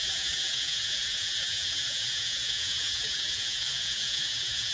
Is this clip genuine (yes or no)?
no